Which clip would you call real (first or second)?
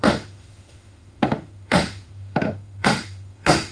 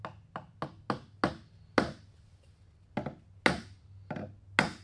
second